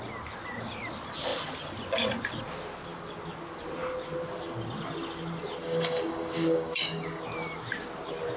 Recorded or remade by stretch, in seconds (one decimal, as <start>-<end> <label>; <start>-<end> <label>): 0.0-5.6 recorded; 5.6-7.2 remade; 7.2-8.4 recorded